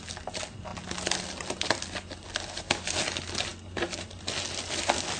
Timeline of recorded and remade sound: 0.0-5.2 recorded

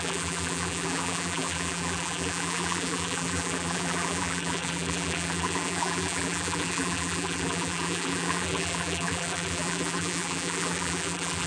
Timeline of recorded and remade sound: 0.0-11.5 remade

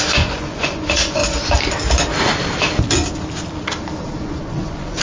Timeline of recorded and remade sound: 0.0-1.2 remade; 1.2-4.2 recorded; 4.2-5.0 remade

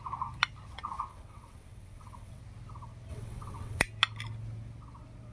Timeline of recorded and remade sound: 0.0-1.1 recorded; 1.1-2.4 remade; 2.4-3.1 recorded; 3.1-3.8 remade; 3.8-5.3 recorded

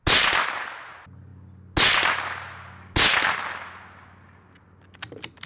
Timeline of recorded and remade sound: 0.0-5.5 recorded